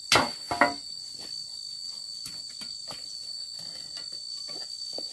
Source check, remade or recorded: recorded